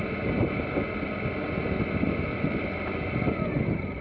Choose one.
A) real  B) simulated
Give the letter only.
A